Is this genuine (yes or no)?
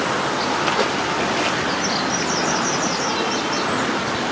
yes